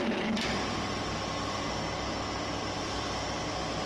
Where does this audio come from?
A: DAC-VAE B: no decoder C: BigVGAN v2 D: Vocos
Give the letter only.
B